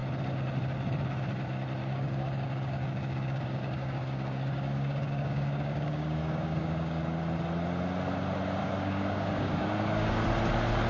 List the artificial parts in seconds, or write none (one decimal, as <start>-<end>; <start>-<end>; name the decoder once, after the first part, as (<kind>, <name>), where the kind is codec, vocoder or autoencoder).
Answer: 1.8-7.0 (codec, DAC); 8.6-10.2